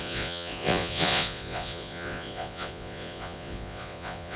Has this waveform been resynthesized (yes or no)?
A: yes